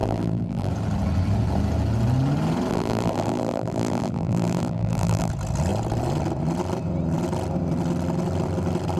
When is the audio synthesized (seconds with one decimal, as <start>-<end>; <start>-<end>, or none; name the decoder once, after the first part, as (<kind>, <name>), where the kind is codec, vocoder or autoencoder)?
0.0-0.7 (vocoder, BigVGAN v2); 2.7-5.3